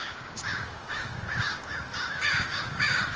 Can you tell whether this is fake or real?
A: fake